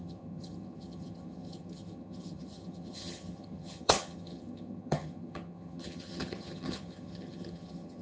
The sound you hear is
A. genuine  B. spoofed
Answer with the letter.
B